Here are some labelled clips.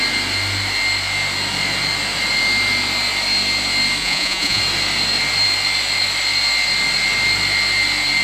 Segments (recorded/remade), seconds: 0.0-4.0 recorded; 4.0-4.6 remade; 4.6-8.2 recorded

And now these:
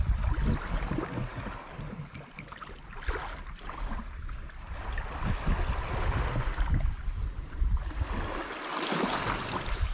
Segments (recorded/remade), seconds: 0.0-9.9 recorded